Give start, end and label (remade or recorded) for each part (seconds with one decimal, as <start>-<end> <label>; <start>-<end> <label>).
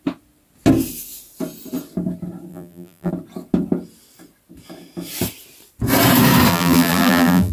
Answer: 0.0-2.5 recorded; 2.5-3.1 remade; 3.1-6.5 recorded; 6.5-7.5 remade